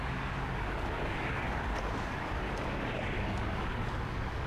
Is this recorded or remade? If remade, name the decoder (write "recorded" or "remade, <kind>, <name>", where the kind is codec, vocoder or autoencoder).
remade, codec, DAC